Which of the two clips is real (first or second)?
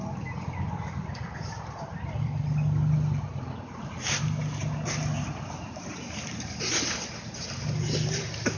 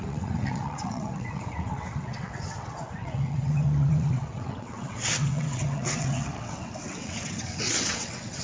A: first